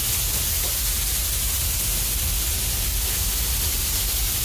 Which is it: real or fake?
real